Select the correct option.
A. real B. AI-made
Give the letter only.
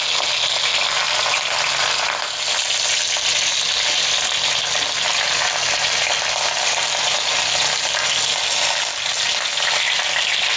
A